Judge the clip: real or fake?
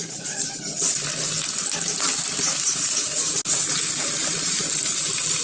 real